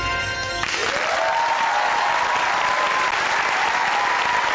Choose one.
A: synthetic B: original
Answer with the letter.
B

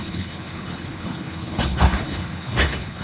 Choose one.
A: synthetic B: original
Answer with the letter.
A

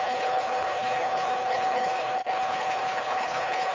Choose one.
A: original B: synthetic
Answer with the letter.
B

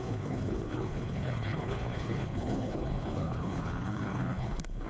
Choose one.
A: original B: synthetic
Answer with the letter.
B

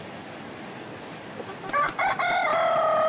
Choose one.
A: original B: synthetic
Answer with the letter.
A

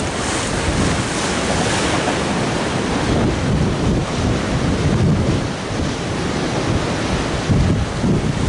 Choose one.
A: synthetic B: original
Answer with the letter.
B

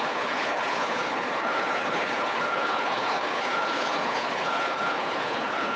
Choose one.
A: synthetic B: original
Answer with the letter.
A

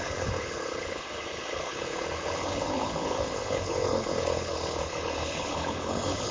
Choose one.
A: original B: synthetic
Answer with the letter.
B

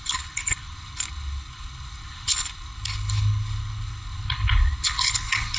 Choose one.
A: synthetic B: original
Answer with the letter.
A